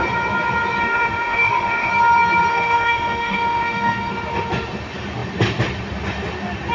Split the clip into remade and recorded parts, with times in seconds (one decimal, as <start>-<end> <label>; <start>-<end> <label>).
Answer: 0.0-0.8 recorded; 0.8-1.9 remade; 1.9-2.5 recorded; 2.5-4.1 remade; 4.1-6.7 recorded